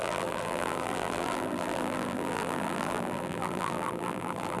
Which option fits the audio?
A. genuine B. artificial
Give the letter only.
B